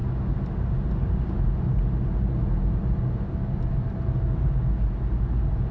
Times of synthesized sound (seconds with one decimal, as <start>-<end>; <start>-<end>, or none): none